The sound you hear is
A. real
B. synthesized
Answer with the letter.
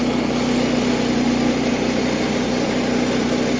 A